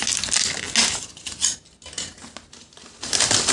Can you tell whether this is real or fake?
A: real